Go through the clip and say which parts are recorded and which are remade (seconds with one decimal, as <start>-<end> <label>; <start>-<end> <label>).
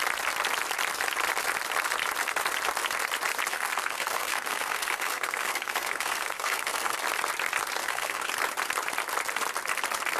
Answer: 0.0-3.5 recorded; 3.5-7.0 remade; 7.0-7.8 recorded; 7.8-8.3 remade; 8.3-10.2 recorded